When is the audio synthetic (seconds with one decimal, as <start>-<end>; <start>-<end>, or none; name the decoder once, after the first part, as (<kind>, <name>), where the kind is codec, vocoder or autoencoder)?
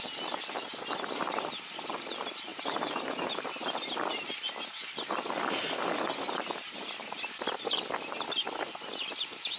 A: 2.5-3.3 (vocoder, BigVGAN v2)